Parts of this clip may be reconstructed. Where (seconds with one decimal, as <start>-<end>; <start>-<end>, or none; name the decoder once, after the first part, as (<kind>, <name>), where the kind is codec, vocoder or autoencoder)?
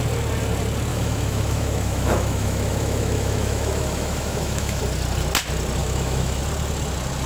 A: 0.9-4.8 (autoencoder, DAC-VAE); 5.8-6.4